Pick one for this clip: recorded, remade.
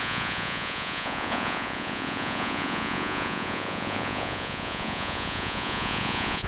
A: remade